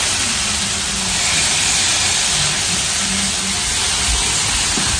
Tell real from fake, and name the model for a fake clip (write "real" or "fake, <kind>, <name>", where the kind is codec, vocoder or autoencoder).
real